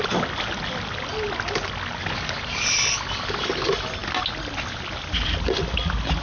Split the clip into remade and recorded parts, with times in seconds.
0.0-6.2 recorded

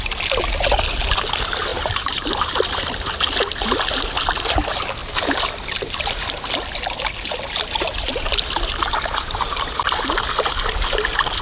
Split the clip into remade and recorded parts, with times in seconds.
0.0-1.7 recorded; 1.7-2.6 remade; 2.6-11.4 recorded

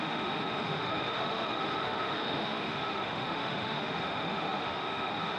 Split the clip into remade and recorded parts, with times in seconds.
0.0-5.4 remade

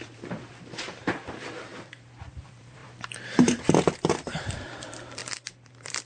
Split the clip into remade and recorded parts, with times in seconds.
0.0-6.1 remade

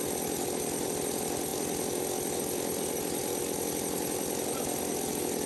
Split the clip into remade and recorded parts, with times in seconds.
0.0-5.5 recorded

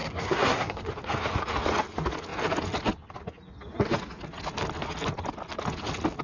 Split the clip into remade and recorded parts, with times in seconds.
0.0-0.9 remade; 0.9-6.2 recorded

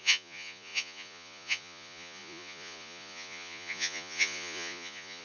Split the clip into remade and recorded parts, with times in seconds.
0.0-5.2 remade

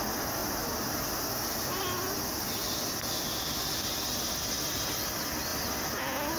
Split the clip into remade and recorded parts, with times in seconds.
0.0-6.4 recorded